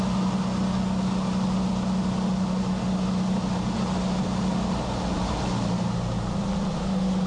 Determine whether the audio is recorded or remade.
recorded